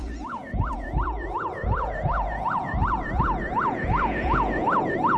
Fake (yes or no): yes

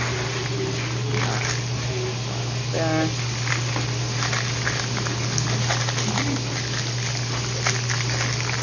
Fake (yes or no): no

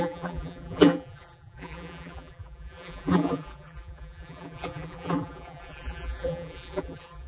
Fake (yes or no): yes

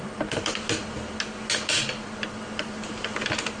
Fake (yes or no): no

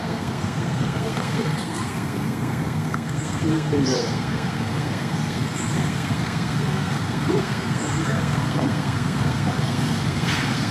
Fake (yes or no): yes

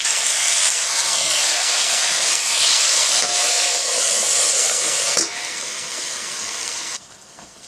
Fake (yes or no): yes